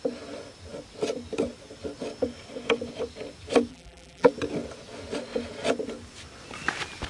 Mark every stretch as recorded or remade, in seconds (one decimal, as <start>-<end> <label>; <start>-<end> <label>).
0.0-3.7 recorded; 3.7-4.3 remade; 4.3-7.1 recorded